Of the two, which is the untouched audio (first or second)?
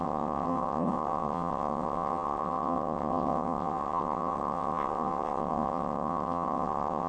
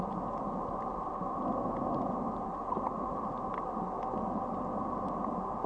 second